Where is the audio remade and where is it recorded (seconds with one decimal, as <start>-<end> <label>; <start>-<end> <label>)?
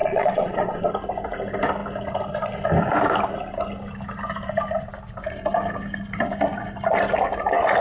0.0-0.9 remade; 0.9-7.8 recorded